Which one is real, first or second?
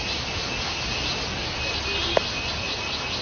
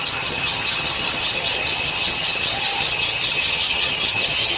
first